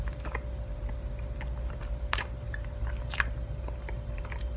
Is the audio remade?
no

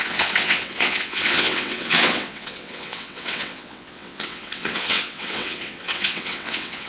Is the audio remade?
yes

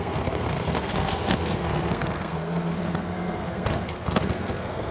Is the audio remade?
yes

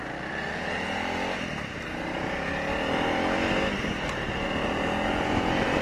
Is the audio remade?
no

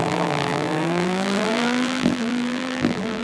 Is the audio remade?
yes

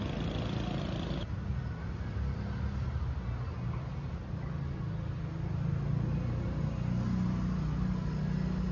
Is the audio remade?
no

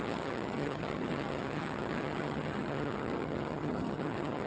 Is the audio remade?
yes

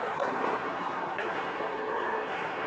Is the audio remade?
yes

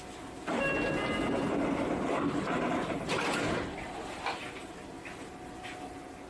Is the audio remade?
no